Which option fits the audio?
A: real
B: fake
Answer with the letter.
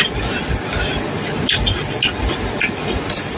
A